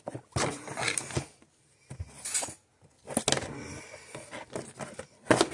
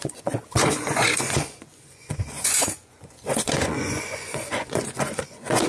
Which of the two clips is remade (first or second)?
second